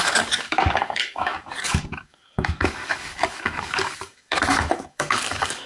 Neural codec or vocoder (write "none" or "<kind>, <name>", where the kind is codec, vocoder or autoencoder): codec, DAC